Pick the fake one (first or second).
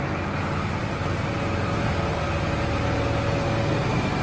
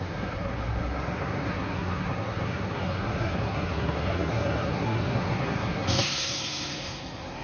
second